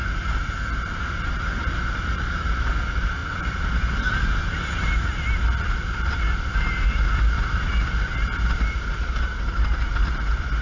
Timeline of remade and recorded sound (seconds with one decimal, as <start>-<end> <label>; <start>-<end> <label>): 0.0-1.0 remade; 1.0-3.2 recorded; 3.2-4.2 remade; 4.2-10.6 recorded